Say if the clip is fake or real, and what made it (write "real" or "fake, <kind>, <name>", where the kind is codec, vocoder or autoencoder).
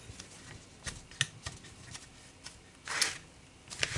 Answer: real